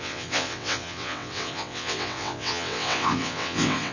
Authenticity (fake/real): fake